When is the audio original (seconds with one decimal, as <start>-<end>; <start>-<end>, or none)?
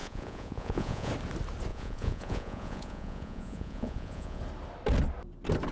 1.1-1.7; 4.4-5.7